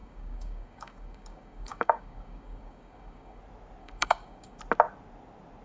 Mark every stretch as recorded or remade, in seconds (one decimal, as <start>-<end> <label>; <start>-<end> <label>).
0.0-3.4 remade; 3.4-3.8 recorded; 3.8-4.6 remade; 4.6-5.6 recorded